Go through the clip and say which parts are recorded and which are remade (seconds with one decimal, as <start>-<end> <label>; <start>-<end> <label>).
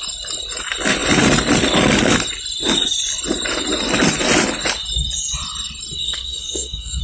0.0-6.0 recorded; 6.0-7.0 remade